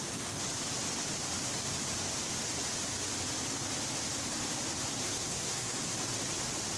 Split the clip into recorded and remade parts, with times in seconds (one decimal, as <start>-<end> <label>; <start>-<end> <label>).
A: 0.0-5.0 recorded; 5.0-5.9 remade; 5.9-6.8 recorded